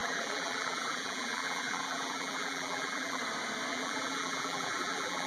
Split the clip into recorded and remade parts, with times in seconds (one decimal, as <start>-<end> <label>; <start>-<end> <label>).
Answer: 0.0-3.2 remade; 3.2-3.7 recorded; 3.7-5.3 remade